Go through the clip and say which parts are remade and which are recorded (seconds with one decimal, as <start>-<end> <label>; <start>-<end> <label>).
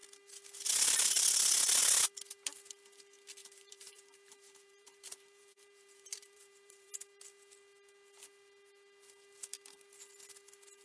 0.0-3.4 recorded; 3.4-6.9 remade; 6.9-10.8 recorded